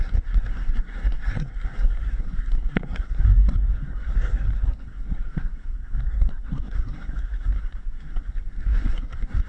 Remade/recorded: remade